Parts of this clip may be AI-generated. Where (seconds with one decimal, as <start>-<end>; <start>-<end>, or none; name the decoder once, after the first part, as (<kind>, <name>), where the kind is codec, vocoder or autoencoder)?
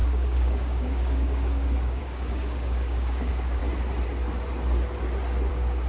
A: 0.0-3.6 (codec, DAC); 5.5-5.9